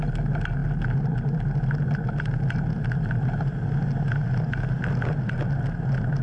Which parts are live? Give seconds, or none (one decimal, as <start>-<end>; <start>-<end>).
0.0-6.2